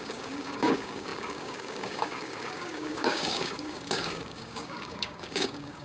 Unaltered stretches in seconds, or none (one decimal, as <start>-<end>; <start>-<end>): none

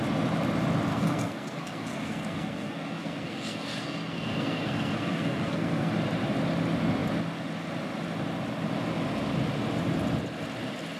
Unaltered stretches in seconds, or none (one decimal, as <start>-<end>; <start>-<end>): 0.0-0.9; 5.9-11.0

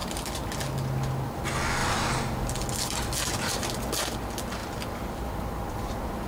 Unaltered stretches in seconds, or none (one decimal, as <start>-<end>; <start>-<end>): 0.6-4.6; 5.5-6.3

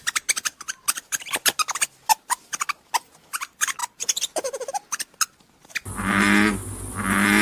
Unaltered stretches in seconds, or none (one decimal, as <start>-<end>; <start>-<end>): 0.0-3.8; 4.7-7.4

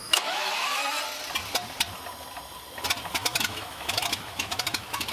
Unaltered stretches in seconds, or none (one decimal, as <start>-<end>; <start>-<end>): 0.8-3.1

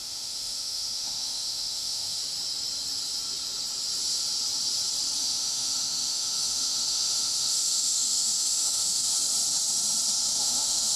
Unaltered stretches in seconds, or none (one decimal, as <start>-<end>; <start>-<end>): 2.2-5.2; 9.1-10.3

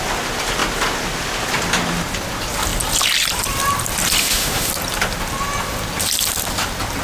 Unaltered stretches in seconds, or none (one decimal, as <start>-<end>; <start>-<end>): 0.0-4.2; 4.7-7.0

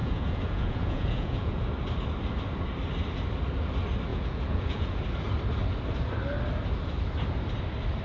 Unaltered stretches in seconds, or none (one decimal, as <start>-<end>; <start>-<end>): 1.6-4.1; 5.0-8.0